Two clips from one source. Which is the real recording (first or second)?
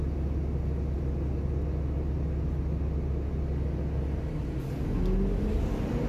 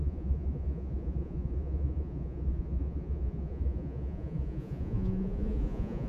first